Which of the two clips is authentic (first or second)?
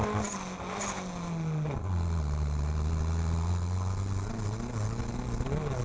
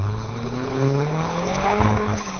first